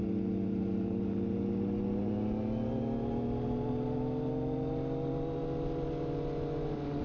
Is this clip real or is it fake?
real